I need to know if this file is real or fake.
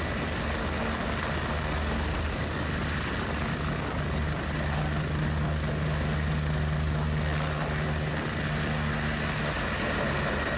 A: real